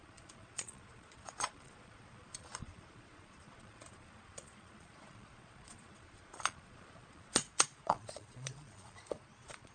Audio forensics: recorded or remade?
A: remade